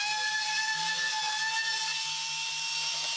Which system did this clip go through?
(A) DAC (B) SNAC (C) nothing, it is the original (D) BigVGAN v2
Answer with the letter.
C